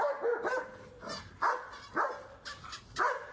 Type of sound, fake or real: real